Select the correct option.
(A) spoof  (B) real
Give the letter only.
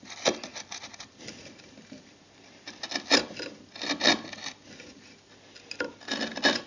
B